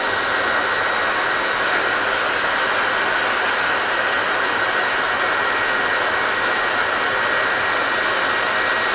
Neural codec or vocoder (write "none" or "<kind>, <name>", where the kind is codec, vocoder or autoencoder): none